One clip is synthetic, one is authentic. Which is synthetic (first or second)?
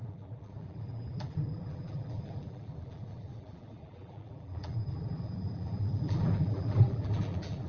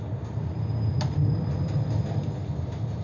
first